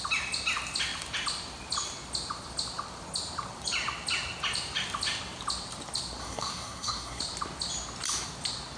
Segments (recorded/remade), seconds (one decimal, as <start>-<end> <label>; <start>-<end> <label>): 0.0-6.2 recorded; 6.2-7.2 remade; 7.2-8.8 recorded